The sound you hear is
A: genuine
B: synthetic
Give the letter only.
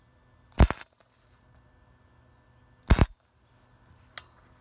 A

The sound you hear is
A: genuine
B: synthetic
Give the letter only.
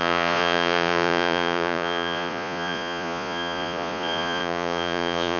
B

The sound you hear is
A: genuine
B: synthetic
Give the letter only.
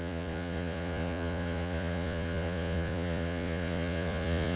B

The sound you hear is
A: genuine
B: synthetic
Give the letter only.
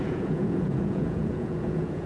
B